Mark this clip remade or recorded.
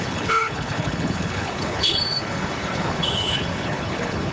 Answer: remade